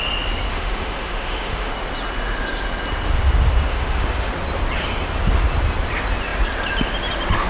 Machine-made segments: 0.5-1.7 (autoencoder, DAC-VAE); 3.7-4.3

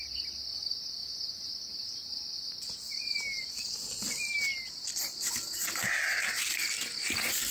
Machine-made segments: 1.0-1.5 (vocoder, BigVGAN v2)

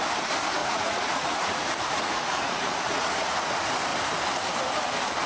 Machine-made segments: 0.6-3.5 (vocoder, Vocos)

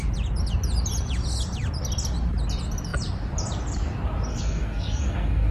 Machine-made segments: 4.3-5.5 (codec, SNAC)

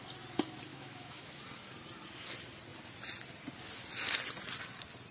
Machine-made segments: 0.7-1.4 (autoencoder, DAC-VAE)